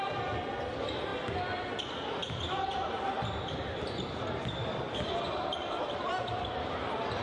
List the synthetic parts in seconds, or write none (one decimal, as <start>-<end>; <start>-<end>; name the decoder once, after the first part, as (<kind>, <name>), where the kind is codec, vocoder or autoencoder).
none